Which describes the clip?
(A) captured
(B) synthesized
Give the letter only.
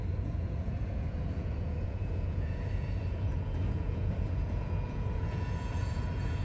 B